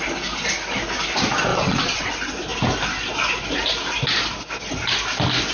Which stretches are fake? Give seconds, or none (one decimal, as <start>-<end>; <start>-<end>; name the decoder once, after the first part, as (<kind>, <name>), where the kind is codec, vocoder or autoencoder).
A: 1.5-2.1 (vocoder, WaveNeXt)